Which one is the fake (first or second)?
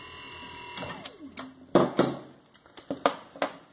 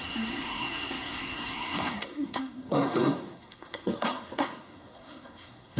second